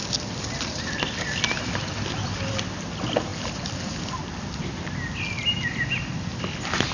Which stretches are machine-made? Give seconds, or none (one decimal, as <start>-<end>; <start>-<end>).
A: none